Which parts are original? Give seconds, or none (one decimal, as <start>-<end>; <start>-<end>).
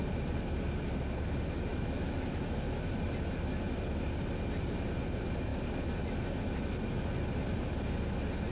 0.0-1.7; 2.5-8.5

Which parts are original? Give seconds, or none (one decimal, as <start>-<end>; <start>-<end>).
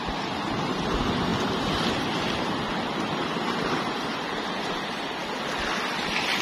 1.3-1.9; 5.2-5.8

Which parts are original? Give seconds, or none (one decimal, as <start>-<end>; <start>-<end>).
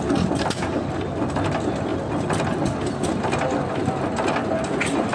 0.0-5.1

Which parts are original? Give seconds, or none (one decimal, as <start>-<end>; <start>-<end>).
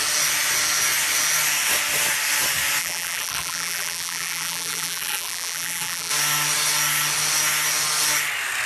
0.0-2.8; 6.1-8.7